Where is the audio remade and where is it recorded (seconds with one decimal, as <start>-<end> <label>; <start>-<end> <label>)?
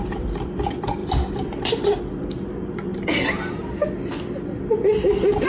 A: 0.0-5.5 recorded